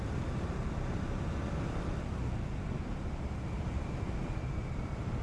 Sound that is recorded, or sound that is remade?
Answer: recorded